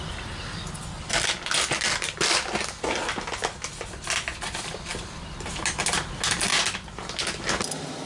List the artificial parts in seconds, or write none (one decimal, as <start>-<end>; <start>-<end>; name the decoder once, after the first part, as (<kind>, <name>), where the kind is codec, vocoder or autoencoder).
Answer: none